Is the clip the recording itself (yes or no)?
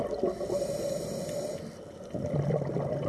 yes